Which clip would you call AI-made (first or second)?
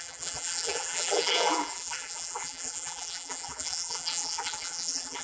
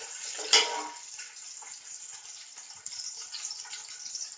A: first